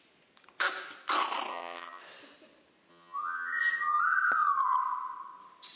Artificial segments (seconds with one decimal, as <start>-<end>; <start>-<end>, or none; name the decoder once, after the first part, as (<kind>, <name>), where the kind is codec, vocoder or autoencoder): 1.5-2.0 (vocoder, HiFi-GAN); 2.9-4.0